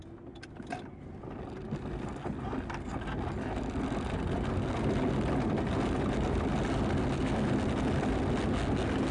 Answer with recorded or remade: recorded